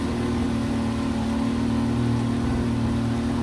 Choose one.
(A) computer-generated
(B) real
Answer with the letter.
B